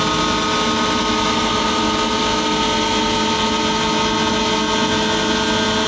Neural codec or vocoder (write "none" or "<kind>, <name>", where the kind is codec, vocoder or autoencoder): none